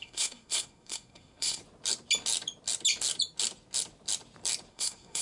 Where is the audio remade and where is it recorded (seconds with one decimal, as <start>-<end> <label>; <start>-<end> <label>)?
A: 0.0-1.6 remade; 1.6-4.7 recorded; 4.7-5.2 remade